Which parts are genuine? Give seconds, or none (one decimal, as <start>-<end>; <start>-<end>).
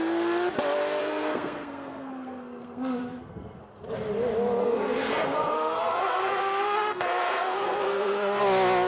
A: 0.0-1.0; 3.6-4.6; 8.4-8.9